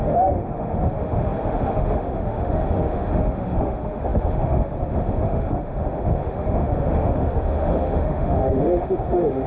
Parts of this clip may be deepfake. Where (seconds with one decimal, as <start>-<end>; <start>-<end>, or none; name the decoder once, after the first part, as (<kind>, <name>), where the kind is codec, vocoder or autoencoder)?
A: 0.0-9.5 (autoencoder, DAC-VAE)